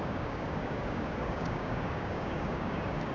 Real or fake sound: fake